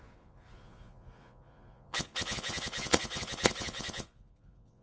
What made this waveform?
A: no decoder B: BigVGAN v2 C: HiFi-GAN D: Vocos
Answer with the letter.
D